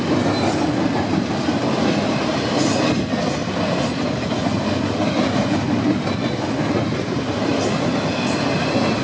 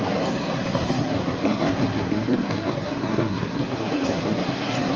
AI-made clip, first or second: second